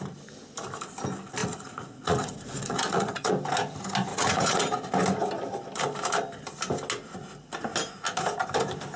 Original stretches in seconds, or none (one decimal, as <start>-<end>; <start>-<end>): 0.0-1.4; 3.3-4.1; 4.6-9.0